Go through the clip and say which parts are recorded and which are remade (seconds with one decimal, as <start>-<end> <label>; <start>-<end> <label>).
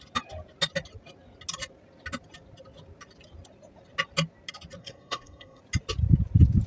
0.0-4.8 recorded; 4.8-5.6 remade; 5.6-6.7 recorded